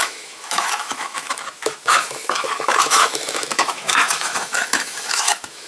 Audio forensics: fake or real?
fake